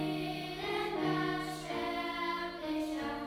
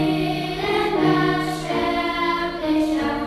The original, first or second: first